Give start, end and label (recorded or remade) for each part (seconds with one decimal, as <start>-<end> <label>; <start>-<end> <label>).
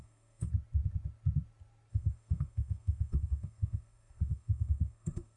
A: 0.0-0.5 remade; 0.5-1.9 recorded; 1.9-5.4 remade